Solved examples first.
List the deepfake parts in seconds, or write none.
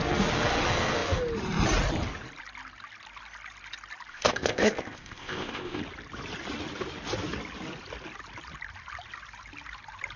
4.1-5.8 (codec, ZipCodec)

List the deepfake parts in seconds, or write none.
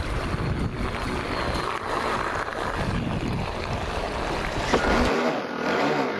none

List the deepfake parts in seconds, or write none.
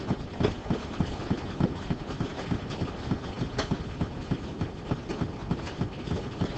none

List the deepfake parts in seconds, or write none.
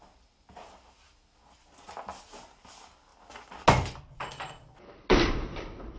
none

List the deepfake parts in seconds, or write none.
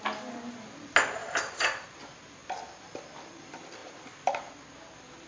1.2-2.0 (vocoder, BigVGAN v2)